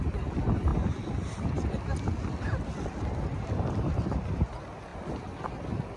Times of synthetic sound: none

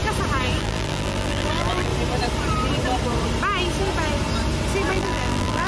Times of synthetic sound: 0.6-1.9 (vocoder, BigVGAN v2); 4.9-5.7

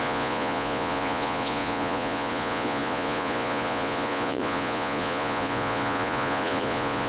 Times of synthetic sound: 0.0-7.1 (vocoder, Vocos)

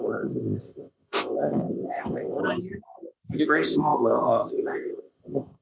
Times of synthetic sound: 0.0-2.4 (codec, ZipCodec); 3.4-5.6

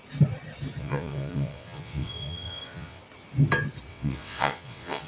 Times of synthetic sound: 0.8-3.0 (vocoder, WaveNeXt); 3.9-5.1